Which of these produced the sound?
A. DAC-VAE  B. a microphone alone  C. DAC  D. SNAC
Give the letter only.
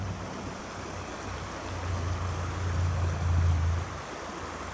B